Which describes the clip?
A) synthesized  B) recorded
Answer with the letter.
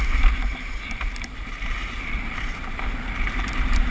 A